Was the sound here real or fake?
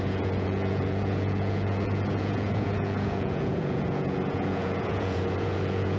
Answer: fake